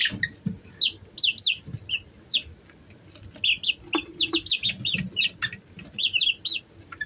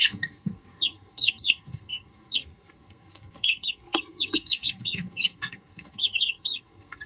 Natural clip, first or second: first